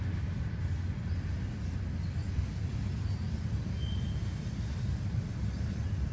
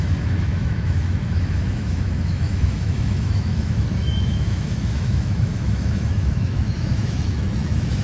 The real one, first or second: first